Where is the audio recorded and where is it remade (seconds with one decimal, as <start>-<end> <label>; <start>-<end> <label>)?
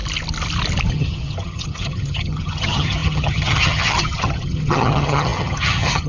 0.0-0.9 recorded; 0.9-6.1 remade